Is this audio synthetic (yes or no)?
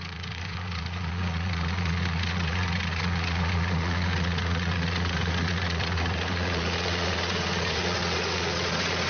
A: yes